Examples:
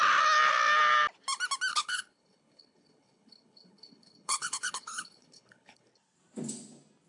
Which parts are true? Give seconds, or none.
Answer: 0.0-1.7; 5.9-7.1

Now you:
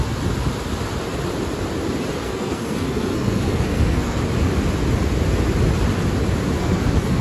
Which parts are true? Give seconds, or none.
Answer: 0.0-2.1; 4.2-6.6

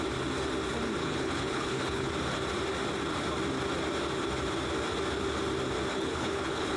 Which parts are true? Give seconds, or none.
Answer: 0.0-1.0; 2.1-5.9

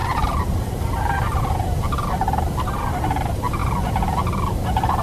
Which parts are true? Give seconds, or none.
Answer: 1.4-5.0